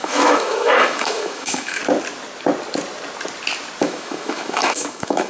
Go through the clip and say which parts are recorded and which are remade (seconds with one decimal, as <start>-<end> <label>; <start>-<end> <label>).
0.0-1.8 remade; 1.8-3.8 recorded; 3.8-5.3 remade